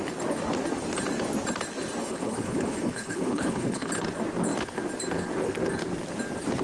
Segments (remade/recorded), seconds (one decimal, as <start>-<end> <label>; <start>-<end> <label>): 0.0-2.0 recorded; 2.0-3.9 remade; 3.9-6.6 recorded